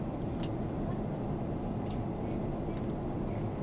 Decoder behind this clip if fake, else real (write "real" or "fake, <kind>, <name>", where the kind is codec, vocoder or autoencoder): real